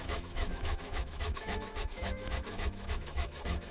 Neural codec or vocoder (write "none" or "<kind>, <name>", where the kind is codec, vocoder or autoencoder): autoencoder, DAC-VAE